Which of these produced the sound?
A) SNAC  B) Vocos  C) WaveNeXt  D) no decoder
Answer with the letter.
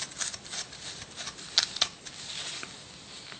D